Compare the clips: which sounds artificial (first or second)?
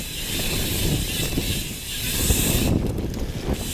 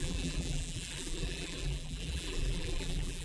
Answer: second